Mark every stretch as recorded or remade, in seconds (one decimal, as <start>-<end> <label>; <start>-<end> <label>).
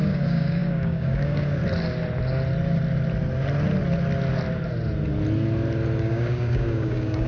0.0-1.6 remade; 1.6-6.0 recorded; 6.0-7.3 remade